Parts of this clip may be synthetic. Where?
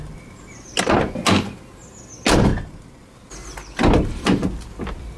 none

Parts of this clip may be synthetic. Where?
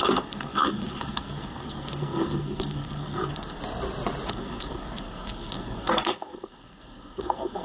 0.0-3.6 (codec, SNAC); 4.3-7.6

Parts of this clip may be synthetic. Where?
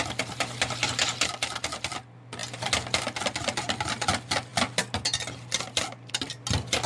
none